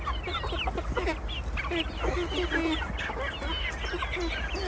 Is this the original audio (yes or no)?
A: yes